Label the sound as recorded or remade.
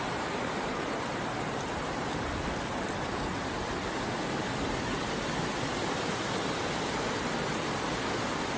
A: remade